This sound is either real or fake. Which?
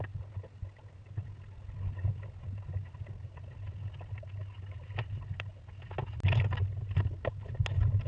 real